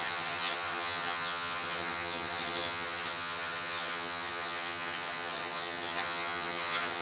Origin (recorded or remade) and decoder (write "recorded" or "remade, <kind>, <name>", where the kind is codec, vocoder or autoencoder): remade, vocoder, HiFi-GAN